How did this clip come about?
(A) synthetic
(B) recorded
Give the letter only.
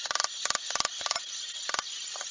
B